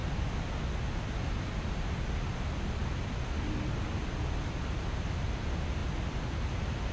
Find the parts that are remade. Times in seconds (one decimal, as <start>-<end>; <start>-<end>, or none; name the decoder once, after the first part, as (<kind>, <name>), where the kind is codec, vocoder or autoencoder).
none